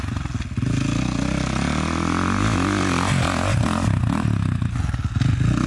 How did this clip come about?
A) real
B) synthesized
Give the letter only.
A